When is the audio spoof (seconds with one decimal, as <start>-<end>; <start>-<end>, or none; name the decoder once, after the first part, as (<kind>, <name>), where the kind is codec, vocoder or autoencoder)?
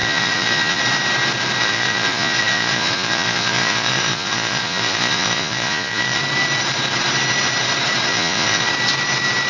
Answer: 0.0-0.8 (vocoder, Vocos); 1.6-6.2; 8.1-8.7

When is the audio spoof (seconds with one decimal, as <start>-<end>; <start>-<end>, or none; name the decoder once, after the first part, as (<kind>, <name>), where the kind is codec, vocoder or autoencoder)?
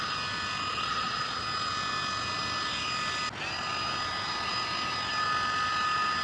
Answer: 0.7-1.4 (vocoder, Vocos)